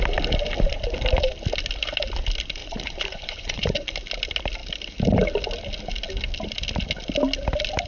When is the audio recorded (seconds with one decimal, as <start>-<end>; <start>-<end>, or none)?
0.0-2.6; 3.9-7.9